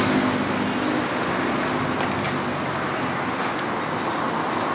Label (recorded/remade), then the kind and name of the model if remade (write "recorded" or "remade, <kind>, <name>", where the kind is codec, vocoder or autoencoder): recorded